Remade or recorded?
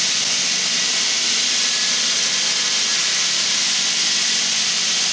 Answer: recorded